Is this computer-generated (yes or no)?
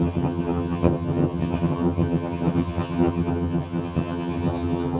yes